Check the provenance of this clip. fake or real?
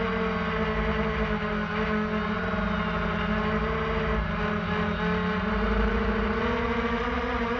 real